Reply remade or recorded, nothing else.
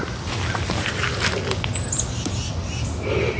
recorded